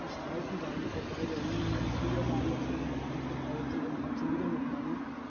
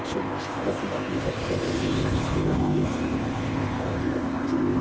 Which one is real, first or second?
first